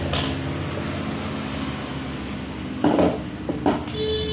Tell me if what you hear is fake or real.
real